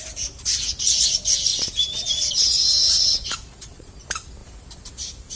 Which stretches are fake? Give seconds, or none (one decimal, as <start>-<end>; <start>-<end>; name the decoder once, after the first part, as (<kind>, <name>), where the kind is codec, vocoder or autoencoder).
3.1-3.9 (vocoder, Vocos)